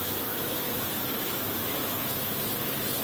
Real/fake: fake